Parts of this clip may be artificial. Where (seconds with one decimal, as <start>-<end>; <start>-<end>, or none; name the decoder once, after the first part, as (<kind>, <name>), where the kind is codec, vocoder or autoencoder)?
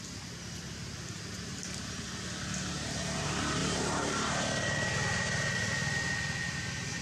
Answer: 3.6-4.3 (vocoder, BigVGAN v2)